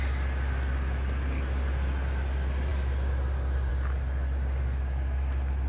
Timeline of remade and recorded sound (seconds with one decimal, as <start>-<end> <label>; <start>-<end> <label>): 0.0-5.7 recorded